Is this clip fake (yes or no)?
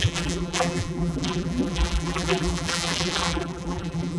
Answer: yes